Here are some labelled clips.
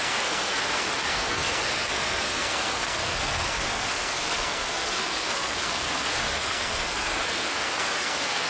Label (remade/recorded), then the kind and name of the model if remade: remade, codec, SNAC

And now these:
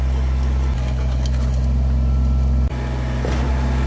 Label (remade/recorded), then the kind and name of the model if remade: recorded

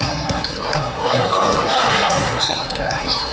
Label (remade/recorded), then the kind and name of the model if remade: remade, codec, SNAC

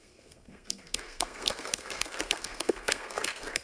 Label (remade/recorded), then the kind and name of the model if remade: remade, codec, SNAC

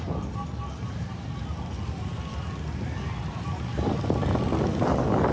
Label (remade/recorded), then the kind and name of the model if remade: recorded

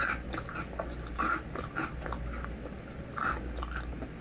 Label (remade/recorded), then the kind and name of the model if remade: recorded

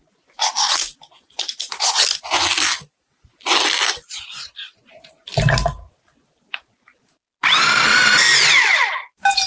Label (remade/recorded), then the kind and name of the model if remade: recorded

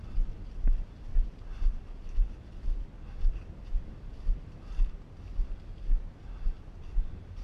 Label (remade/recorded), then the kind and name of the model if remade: recorded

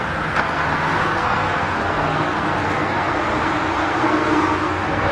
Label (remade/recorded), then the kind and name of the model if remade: remade, codec, SNAC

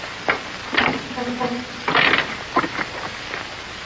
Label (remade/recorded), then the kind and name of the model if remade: recorded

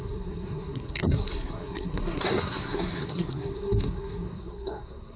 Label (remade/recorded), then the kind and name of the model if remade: remade, codec, SNAC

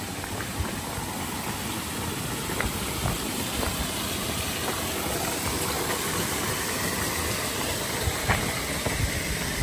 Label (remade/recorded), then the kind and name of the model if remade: recorded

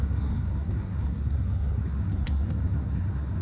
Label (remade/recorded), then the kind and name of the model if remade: remade, codec, SNAC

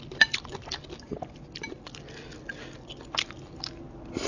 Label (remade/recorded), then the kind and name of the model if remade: recorded